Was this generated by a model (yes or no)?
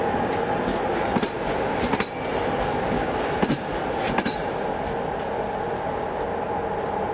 no